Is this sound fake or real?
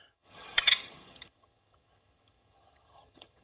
fake